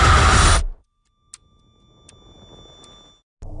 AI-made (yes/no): no